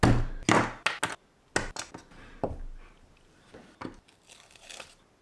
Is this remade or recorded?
recorded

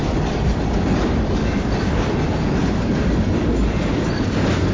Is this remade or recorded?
recorded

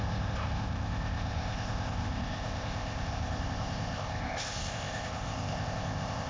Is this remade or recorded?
remade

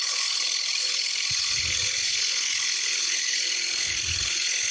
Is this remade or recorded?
remade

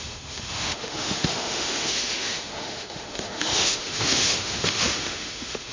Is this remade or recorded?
remade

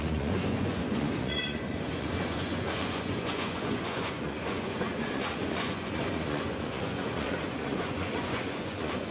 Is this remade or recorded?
remade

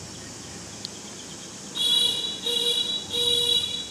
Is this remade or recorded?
recorded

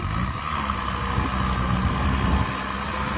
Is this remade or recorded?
recorded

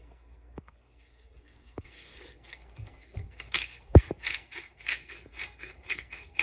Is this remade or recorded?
remade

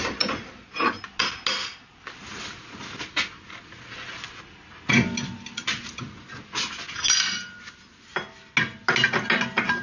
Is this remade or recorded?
recorded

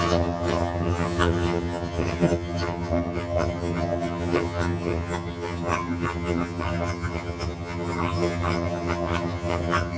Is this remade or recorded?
remade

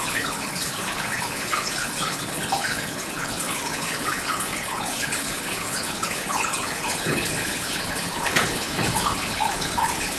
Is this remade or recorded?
remade